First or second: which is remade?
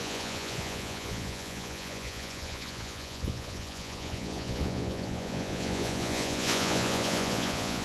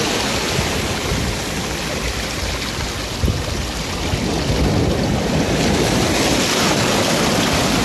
first